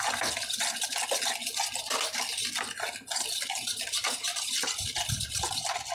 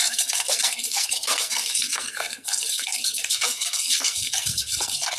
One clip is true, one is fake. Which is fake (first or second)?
second